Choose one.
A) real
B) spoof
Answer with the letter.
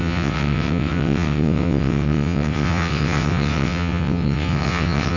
B